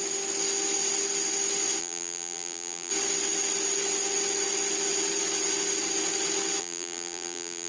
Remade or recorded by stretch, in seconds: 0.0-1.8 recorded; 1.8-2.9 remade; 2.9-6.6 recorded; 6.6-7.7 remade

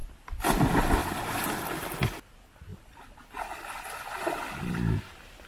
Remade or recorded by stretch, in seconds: 0.0-1.0 recorded; 1.0-1.5 remade; 1.5-5.5 recorded

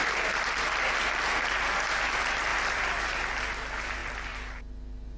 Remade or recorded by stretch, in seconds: 0.0-0.7 remade; 0.7-2.5 recorded; 2.5-3.3 remade; 3.3-4.0 recorded; 4.0-4.6 remade; 4.6-5.2 recorded

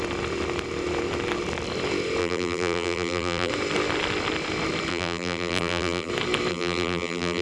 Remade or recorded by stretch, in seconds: 0.0-2.2 recorded; 2.2-3.5 remade; 3.5-4.9 recorded; 4.9-6.1 remade; 6.1-6.5 recorded; 6.5-7.4 remade